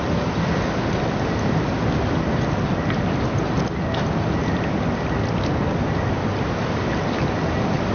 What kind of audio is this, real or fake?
real